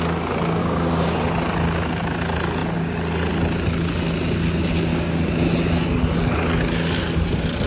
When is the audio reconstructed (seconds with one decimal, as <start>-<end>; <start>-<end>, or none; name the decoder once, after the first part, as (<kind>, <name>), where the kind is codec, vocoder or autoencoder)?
0.6-1.2 (codec, DAC); 4.9-5.5